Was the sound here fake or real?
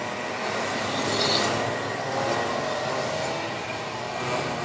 real